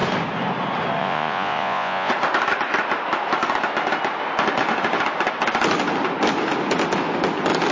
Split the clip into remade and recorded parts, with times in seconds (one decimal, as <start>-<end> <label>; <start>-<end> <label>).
0.0-1.0 recorded; 1.0-2.1 remade; 2.1-7.7 recorded